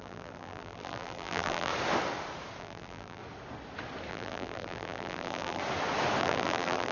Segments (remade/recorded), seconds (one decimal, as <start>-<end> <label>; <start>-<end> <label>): 0.0-1.7 remade; 1.7-2.6 recorded; 2.6-3.2 remade; 3.2-4.1 recorded; 4.1-5.6 remade; 5.6-6.2 recorded; 6.2-6.9 remade